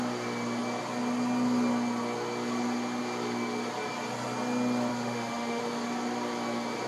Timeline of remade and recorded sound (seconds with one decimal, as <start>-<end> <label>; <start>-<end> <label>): 0.0-4.9 recorded; 4.9-5.6 remade; 5.6-6.9 recorded